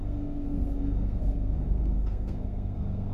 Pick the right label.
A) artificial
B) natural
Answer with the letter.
A